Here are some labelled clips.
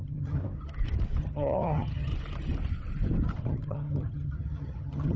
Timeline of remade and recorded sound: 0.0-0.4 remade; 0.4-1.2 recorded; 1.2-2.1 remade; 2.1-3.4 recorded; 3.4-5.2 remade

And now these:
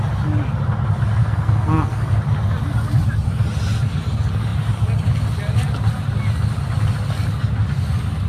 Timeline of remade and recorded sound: 0.0-1.2 recorded; 1.2-2.2 remade; 2.2-8.3 recorded

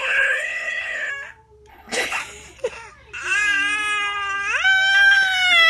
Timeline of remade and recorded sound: 0.0-1.1 remade; 1.1-1.7 recorded; 1.7-2.2 remade; 2.2-5.7 recorded

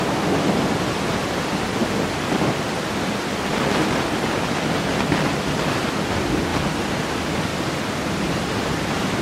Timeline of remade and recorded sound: 0.0-9.2 recorded